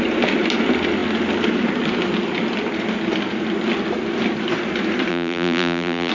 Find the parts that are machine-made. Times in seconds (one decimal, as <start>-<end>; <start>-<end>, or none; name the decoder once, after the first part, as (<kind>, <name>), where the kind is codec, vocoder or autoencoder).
5.1-6.1 (vocoder, BigVGAN v2)